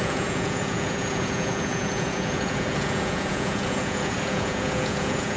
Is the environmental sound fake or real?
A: fake